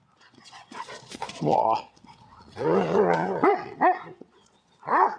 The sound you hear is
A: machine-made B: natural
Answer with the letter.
A